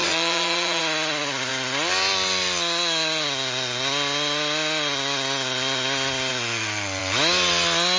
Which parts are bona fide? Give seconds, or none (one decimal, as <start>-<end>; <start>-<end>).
0.8-8.0